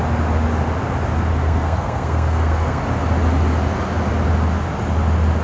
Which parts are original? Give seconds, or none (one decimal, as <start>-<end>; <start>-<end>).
0.0-1.3; 2.8-5.4